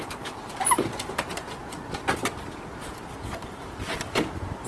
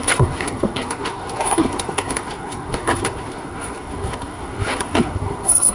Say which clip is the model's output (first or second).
second